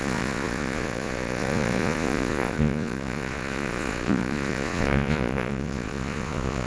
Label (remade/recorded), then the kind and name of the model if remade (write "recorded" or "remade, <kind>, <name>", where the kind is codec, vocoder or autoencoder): remade, vocoder, Vocos